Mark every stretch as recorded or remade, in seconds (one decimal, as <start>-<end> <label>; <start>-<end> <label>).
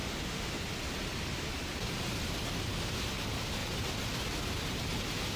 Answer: 0.0-0.6 remade; 0.6-5.4 recorded